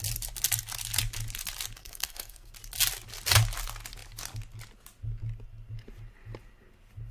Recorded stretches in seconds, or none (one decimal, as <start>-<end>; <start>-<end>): 0.0-1.8; 2.5-7.1